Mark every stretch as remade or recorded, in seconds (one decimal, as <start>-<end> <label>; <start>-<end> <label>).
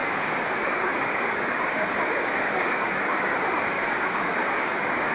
0.0-5.1 remade